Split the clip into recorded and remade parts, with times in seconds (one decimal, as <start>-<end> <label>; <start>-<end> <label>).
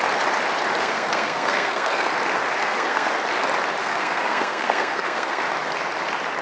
0.0-0.8 recorded; 0.8-2.1 remade; 2.1-2.6 recorded; 2.6-3.1 remade; 3.1-3.8 recorded; 3.8-5.4 remade; 5.4-6.4 recorded